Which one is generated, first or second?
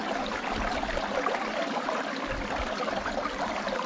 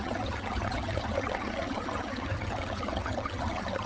second